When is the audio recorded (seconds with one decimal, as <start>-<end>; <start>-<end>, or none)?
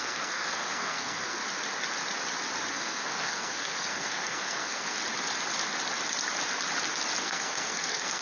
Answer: 1.4-2.7; 5.0-7.2